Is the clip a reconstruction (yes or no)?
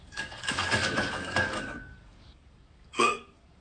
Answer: yes